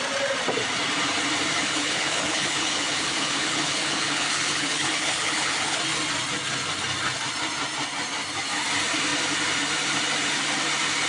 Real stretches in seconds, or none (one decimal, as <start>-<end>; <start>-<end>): 0.0-1.6; 5.8-11.1

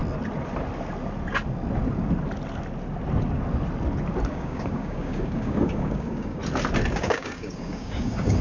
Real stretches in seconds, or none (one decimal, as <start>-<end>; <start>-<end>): 0.0-4.3; 6.4-7.0

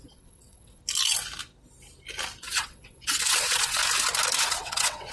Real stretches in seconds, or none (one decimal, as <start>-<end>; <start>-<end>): 0.8-2.4; 3.8-4.4

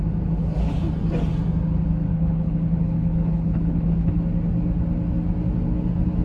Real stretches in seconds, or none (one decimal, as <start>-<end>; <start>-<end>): 0.0-2.1; 4.1-6.2

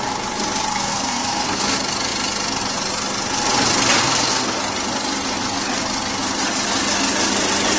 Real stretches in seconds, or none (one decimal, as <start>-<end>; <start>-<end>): 0.0-0.7; 1.6-4.0; 4.6-7.8

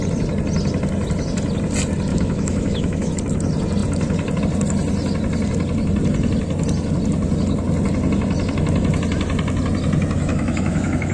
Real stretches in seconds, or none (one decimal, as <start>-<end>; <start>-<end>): 0.0-2.1; 3.1-10.3

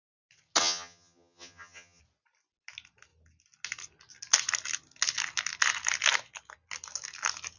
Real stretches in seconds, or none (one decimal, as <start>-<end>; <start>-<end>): 0.0-0.6; 2.0-7.6